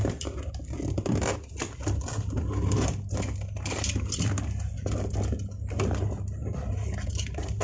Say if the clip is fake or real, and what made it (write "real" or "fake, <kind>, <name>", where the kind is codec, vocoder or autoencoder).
fake, vocoder, BigVGAN v2